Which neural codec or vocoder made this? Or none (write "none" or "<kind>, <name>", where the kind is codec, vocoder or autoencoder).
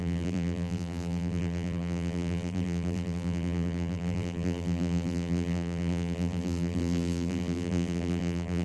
vocoder, BigVGAN v2